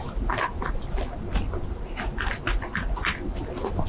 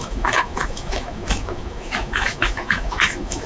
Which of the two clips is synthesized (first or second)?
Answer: second